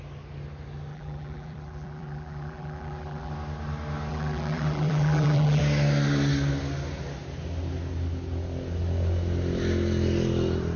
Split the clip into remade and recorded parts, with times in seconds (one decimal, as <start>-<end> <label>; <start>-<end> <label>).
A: 0.0-0.9 recorded; 0.9-3.3 remade; 3.3-4.1 recorded; 4.1-5.6 remade; 5.6-10.8 recorded